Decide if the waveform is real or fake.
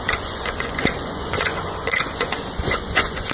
fake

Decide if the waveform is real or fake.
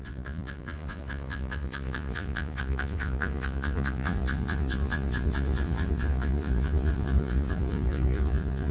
fake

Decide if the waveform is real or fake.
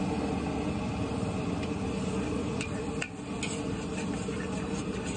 real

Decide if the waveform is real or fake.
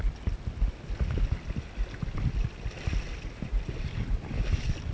real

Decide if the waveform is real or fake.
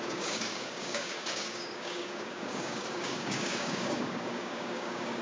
fake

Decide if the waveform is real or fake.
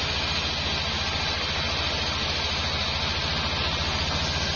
real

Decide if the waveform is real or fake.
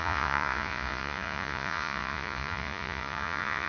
fake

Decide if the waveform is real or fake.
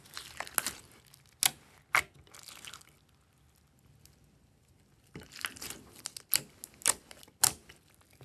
real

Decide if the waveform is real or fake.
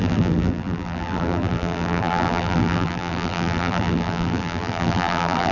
fake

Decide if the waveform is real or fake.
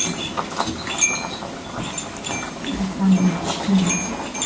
real